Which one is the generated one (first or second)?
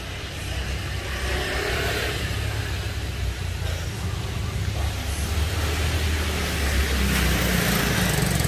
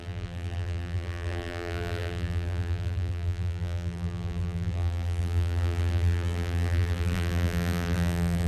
second